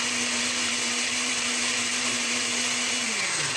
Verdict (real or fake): fake